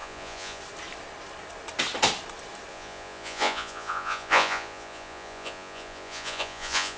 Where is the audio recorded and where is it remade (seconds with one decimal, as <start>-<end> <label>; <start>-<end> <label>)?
0.0-0.6 remade; 0.6-2.7 recorded; 2.7-7.0 remade